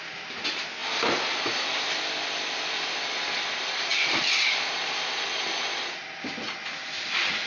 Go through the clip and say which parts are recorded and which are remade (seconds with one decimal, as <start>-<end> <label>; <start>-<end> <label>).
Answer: 0.0-7.5 recorded